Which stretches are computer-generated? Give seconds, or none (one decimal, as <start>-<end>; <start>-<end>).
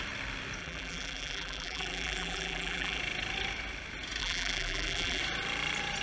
0.6-3.0; 4.2-5.2